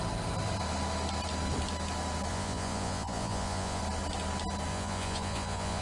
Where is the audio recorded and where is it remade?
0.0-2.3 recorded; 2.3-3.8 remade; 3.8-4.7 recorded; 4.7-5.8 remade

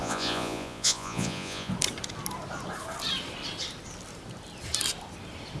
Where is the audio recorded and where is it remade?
0.0-1.7 remade; 1.7-5.6 recorded